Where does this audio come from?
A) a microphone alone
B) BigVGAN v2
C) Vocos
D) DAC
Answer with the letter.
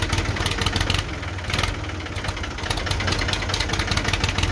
A